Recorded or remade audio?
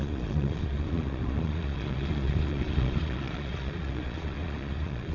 remade